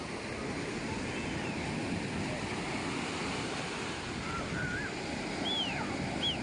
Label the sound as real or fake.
real